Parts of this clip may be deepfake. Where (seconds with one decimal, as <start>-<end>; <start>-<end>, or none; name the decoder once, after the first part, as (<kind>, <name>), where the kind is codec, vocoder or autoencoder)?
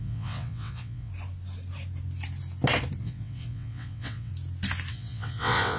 0.0-1.1 (vocoder, WaveNeXt); 3.0-4.3; 4.9-5.8